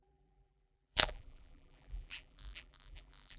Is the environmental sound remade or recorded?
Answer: remade